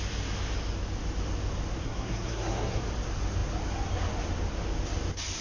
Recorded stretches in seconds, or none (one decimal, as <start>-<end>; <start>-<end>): 0.0-1.8; 2.8-5.4